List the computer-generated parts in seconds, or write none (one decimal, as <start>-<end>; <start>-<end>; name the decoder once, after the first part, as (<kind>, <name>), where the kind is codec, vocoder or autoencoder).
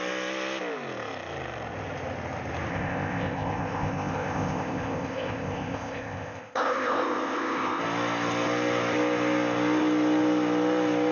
2.7-7.8 (codec, ZipCodec)